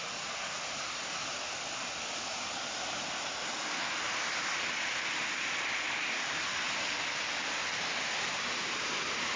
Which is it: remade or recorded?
recorded